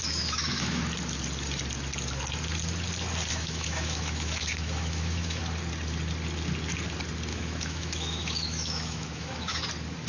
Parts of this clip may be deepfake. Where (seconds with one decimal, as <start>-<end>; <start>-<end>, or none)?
0.0-0.8; 3.3-5.4; 7.3-9.6